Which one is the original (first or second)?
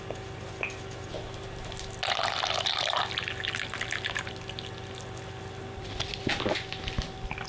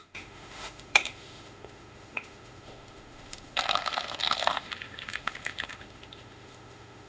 first